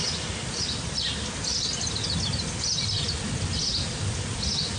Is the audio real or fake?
real